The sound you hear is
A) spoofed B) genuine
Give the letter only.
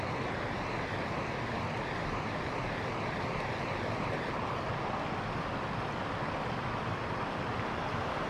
B